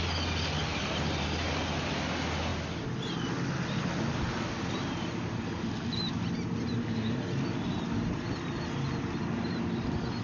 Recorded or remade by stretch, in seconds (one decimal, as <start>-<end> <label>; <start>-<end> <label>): 0.0-0.7 recorded; 0.7-1.6 remade; 1.6-10.2 recorded